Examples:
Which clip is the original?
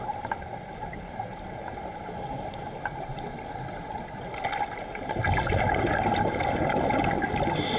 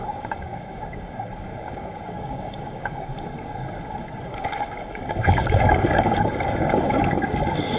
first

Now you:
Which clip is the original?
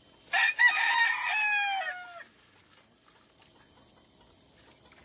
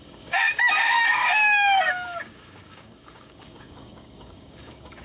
first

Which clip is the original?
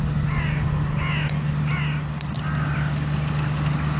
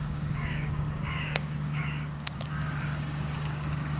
first